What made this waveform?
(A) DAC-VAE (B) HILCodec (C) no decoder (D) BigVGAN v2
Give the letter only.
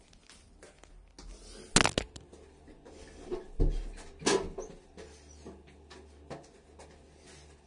C